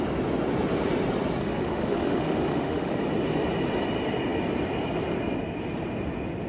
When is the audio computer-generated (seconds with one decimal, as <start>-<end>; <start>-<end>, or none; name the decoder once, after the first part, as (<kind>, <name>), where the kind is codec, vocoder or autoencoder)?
1.4-3.0 (autoencoder, DAC-VAE)